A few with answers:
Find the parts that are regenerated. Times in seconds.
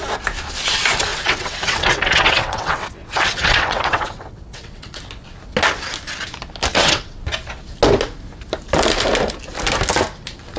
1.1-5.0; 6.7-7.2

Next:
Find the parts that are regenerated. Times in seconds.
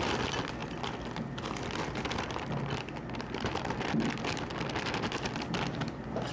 none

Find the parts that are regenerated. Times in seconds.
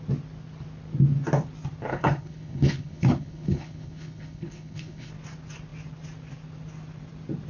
1.9-5.1